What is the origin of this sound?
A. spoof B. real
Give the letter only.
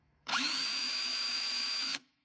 A